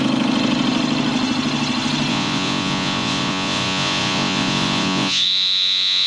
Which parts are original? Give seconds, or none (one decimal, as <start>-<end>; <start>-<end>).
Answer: 0.0-2.1